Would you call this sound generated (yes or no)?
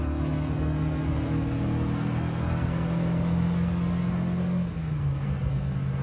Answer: yes